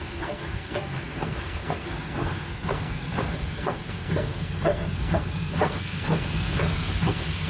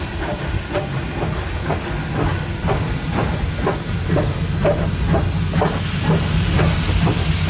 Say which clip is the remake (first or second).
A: first